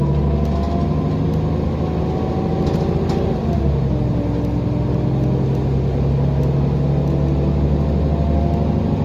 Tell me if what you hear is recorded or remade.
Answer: recorded